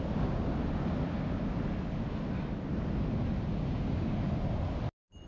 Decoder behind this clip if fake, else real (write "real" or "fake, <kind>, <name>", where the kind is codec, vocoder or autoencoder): real